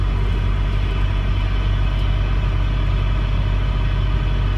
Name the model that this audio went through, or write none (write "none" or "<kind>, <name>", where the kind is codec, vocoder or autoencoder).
none